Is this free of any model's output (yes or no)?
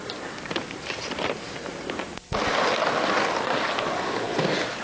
yes